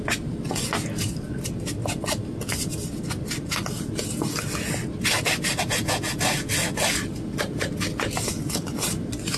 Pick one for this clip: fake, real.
real